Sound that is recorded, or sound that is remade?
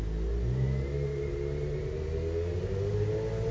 recorded